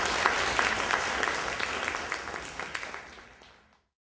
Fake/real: real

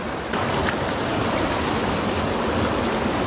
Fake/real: real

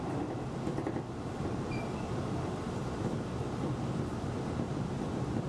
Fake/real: real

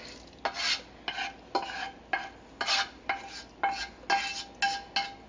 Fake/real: real